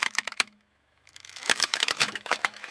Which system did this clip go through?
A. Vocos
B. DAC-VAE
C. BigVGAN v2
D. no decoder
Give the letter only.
B